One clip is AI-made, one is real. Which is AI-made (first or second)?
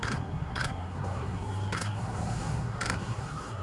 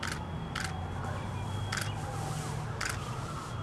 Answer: first